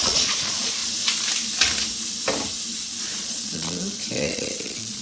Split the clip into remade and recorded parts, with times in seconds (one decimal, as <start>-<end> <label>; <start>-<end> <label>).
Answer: 0.0-0.8 remade; 0.8-3.0 recorded; 3.0-5.0 remade